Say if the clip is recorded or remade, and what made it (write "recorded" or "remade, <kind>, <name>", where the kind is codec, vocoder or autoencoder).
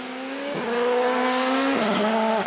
remade, codec, DAC